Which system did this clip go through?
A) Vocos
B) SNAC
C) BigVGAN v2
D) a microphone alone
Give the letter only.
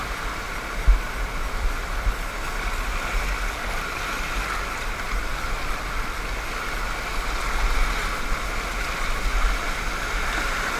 D